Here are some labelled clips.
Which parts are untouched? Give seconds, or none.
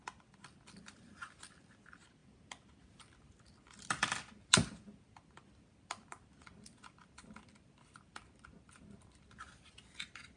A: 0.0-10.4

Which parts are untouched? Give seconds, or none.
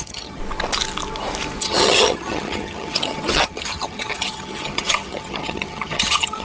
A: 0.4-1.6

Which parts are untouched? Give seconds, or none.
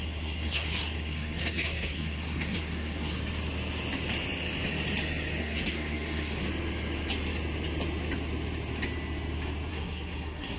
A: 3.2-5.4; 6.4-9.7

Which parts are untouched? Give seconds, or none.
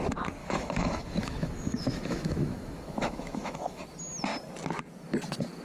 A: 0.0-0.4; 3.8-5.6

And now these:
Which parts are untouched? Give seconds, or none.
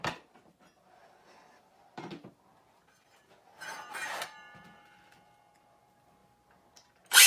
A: 0.0-4.0; 5.8-7.3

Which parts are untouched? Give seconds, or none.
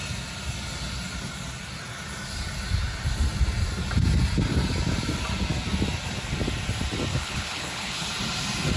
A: 0.0-7.1; 8.1-8.8